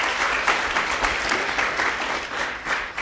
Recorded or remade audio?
remade